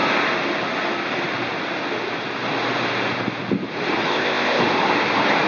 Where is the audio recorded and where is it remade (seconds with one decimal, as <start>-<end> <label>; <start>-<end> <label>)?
0.0-4.1 recorded; 4.1-4.6 remade; 4.6-5.5 recorded